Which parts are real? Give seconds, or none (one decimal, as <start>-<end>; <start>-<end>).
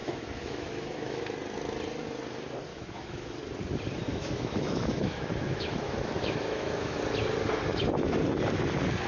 1.2-2.7; 3.4-4.1; 7.0-9.1